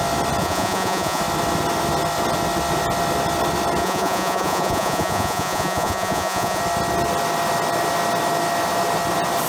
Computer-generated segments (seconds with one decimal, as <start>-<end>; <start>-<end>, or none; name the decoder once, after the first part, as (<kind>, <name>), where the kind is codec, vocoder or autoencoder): 0.4-1.2 (vocoder, Vocos); 3.8-6.6